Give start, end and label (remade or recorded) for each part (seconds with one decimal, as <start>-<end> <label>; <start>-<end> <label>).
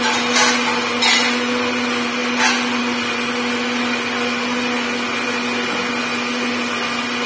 0.0-7.3 recorded